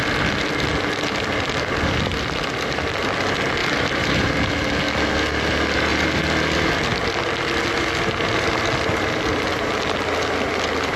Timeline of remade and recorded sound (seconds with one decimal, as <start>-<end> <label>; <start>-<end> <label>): 0.0-3.6 recorded; 3.6-4.3 remade; 4.3-11.0 recorded